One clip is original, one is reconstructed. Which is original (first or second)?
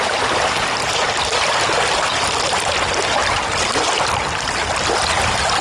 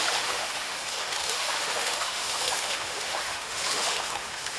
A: first